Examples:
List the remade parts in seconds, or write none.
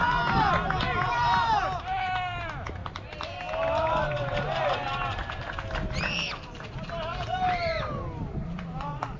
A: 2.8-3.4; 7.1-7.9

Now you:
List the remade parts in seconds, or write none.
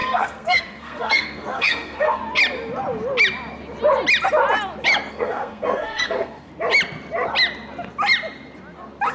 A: 0.0-2.2; 5.1-6.5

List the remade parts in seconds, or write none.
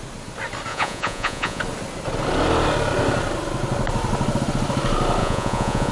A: 0.7-1.6; 5.2-5.9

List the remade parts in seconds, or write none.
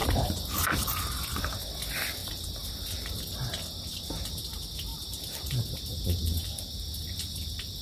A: 0.0-1.2; 2.2-3.2; 4.9-6.5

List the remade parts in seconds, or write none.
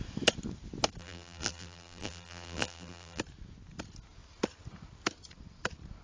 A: 1.0-3.2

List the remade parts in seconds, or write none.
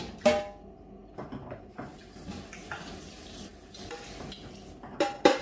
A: 1.0-1.8